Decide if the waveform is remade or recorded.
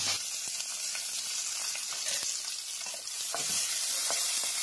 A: recorded